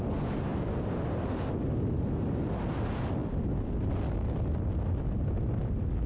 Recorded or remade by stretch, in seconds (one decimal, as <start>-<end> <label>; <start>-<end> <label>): 0.0-6.1 recorded